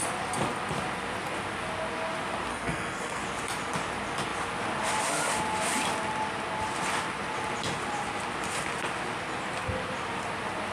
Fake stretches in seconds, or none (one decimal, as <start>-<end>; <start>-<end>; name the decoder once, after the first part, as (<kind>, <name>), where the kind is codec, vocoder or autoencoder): 2.5-3.2 (codec, SNAC)

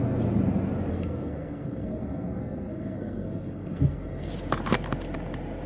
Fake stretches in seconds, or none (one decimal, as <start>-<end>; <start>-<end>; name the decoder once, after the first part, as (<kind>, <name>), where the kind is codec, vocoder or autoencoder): 0.9-4.3 (codec, SNAC)

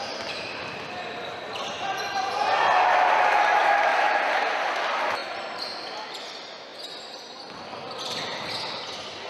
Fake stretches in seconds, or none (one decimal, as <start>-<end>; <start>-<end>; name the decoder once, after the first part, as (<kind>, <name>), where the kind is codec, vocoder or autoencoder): 3.9-4.6 (vocoder, BigVGAN v2)